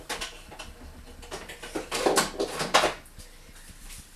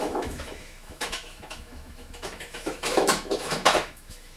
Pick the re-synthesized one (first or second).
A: second